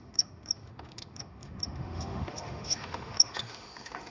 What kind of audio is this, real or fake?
fake